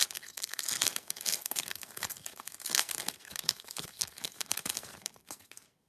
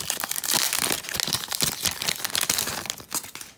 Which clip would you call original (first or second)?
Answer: second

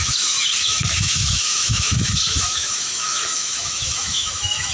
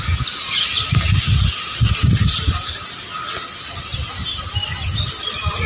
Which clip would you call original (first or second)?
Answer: second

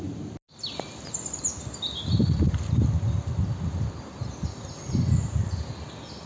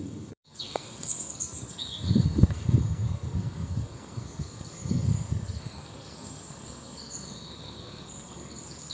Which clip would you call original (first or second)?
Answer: first